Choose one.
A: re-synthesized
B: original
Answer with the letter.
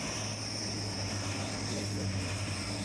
B